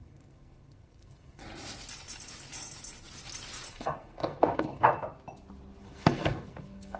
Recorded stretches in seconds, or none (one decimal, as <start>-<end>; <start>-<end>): 1.4-3.7; 4.9-5.8